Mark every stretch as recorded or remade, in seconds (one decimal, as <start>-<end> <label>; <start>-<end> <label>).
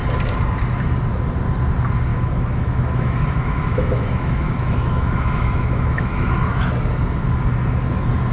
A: 0.0-2.1 recorded; 2.1-6.7 remade; 6.7-8.3 recorded